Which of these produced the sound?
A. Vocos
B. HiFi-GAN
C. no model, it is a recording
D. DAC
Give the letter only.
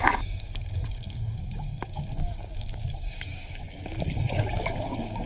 D